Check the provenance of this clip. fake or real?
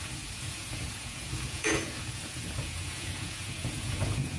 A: fake